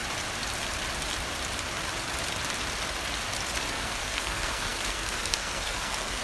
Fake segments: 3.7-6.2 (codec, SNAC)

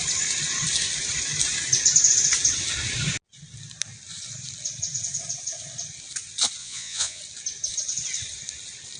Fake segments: 6.6-7.2 (vocoder, Vocos)

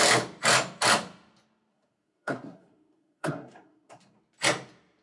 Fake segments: 1.7-4.2 (codec, SNAC)

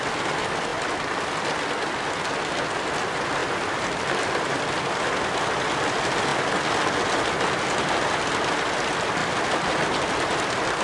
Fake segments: 3.4-4.8 (vocoder, BigVGAN v2); 9.2-10.0

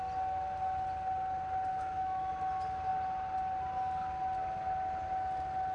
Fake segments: 1.7-2.3 (autoencoder, DAC-VAE)

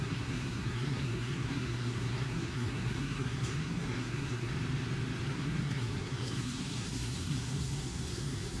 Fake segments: 0.0-4.5 (codec, SNAC); 5.3-8.6

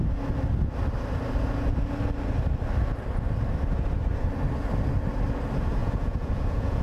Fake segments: 5.8-6.8 (vocoder, Vocos)

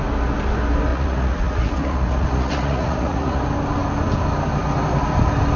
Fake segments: 0.9-3.4 (vocoder, Vocos)